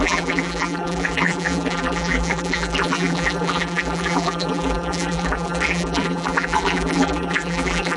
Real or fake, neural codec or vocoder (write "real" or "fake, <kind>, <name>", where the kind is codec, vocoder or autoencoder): fake, vocoder, BigVGAN v2